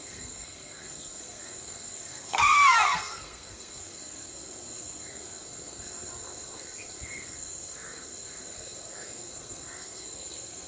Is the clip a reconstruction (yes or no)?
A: yes